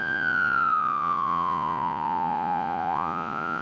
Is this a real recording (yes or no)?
no